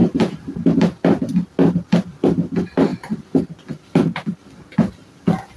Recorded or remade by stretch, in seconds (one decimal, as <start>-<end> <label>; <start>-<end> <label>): 0.0-2.9 recorded; 2.9-4.6 remade; 4.6-5.6 recorded